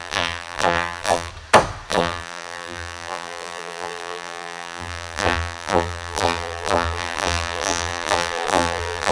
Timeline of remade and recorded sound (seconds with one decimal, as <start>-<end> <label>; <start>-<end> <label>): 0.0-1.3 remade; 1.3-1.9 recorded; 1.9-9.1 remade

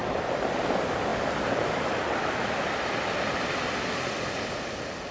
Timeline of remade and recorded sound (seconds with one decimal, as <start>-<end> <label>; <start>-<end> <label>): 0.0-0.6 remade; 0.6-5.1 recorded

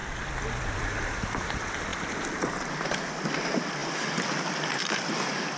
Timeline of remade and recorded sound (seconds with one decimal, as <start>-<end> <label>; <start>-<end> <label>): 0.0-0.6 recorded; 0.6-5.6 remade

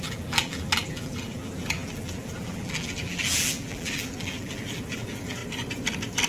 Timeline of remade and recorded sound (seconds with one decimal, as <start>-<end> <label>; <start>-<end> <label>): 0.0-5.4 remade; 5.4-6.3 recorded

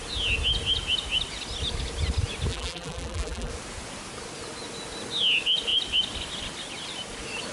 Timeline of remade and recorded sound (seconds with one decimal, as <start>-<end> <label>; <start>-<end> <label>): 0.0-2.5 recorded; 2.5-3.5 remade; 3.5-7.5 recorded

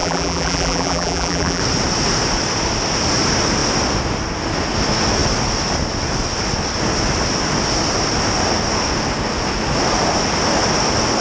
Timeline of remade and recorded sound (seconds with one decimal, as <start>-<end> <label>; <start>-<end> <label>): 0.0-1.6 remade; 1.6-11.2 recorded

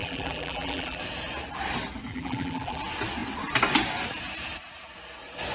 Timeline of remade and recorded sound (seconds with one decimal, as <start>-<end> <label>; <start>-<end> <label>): 0.0-1.0 remade; 1.0-2.1 recorded; 2.1-2.8 remade; 2.8-5.5 recorded

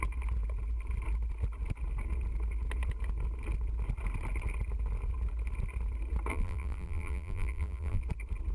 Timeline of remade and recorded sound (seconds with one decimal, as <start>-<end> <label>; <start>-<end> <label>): 0.0-6.3 recorded; 6.3-8.0 remade; 8.0-8.5 recorded